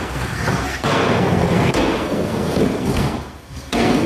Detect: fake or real fake